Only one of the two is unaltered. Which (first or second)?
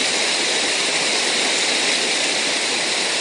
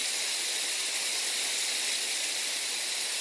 second